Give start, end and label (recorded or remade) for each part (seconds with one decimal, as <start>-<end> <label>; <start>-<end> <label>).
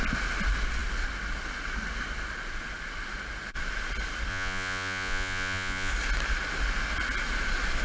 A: 0.0-4.3 recorded; 4.3-5.9 remade; 5.9-7.8 recorded